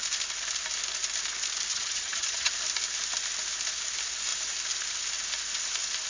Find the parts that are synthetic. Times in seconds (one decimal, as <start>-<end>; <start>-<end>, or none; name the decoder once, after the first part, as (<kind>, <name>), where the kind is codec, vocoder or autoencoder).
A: 1.7-2.5 (vocoder, HiFi-GAN)